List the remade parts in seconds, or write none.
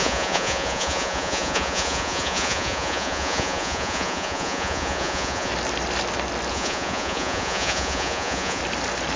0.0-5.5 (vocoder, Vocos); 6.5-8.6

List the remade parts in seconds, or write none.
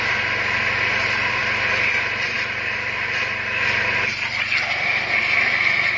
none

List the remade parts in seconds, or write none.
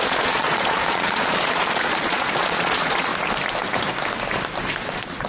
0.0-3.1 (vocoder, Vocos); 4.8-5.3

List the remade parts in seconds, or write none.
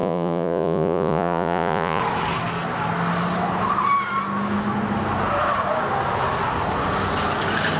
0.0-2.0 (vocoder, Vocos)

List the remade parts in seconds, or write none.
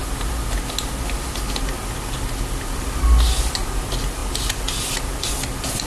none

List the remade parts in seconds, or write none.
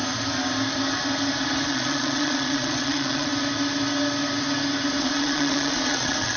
1.7-3.3 (vocoder, Vocos); 5.0-6.4